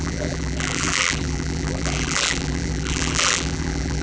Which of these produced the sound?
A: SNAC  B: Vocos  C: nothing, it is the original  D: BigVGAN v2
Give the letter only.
D